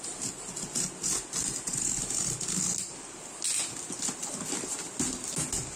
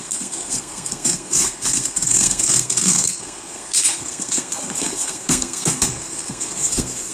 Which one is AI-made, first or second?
second